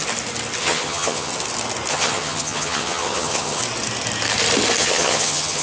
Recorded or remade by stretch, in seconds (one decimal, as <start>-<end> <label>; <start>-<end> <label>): 0.0-0.6 recorded; 0.6-1.3 remade; 1.3-1.9 recorded; 1.9-3.6 remade; 3.6-4.8 recorded; 4.8-5.6 remade